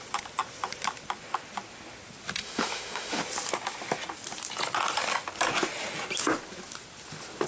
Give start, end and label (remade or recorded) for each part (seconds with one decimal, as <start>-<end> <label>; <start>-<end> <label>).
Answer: 0.0-2.4 recorded; 2.4-3.2 remade; 3.2-7.5 recorded